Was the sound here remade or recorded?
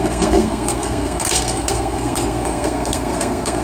remade